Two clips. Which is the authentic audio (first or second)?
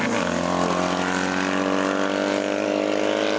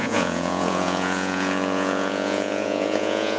first